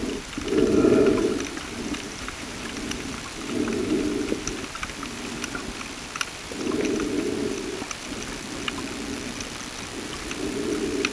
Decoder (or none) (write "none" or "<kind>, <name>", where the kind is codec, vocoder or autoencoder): none